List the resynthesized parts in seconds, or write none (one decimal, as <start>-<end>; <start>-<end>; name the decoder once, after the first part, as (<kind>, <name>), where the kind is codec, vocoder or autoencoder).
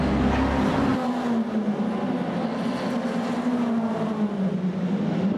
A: none